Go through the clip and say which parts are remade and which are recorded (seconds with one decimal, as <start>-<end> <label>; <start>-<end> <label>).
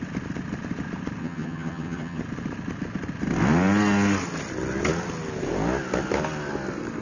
0.0-1.2 recorded; 1.2-2.2 remade; 2.2-7.0 recorded